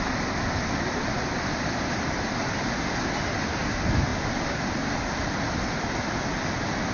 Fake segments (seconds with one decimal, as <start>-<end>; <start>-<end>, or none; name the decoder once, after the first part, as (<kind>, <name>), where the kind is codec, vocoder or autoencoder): none